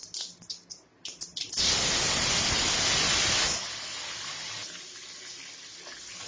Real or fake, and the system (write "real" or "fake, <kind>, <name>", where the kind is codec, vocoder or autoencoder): real